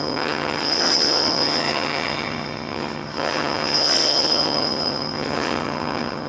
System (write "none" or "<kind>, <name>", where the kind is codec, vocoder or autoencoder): vocoder, HiFi-GAN